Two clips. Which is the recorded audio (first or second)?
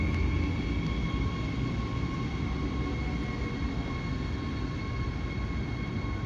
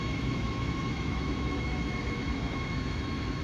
first